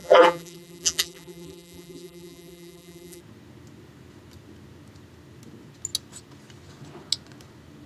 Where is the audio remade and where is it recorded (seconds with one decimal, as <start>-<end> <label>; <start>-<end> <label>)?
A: 0.0-3.2 remade; 3.2-7.9 recorded